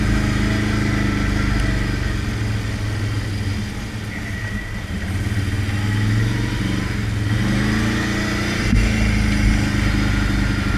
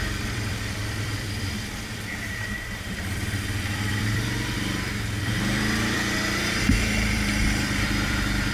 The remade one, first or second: second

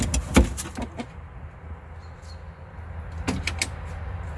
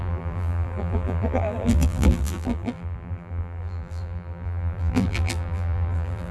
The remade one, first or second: second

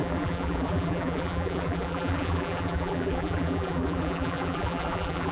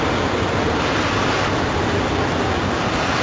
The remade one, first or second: first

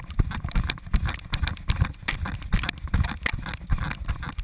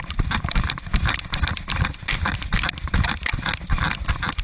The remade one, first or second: second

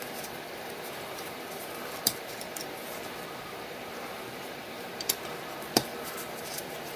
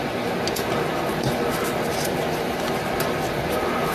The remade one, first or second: first